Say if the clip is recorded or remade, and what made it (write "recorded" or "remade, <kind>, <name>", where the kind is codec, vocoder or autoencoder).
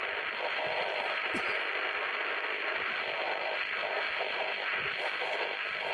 recorded